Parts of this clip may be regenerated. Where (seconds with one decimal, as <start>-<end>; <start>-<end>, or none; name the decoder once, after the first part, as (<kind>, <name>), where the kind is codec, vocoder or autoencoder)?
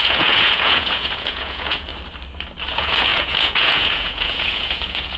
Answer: 0.0-1.9 (vocoder, Vocos); 2.7-5.2